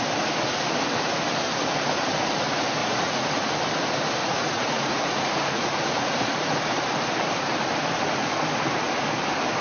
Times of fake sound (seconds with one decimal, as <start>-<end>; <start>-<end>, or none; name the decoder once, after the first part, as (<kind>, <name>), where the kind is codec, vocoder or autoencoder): 2.8-3.5 (vocoder, Vocos); 4.2-6.4